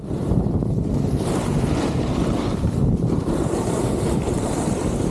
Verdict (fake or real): fake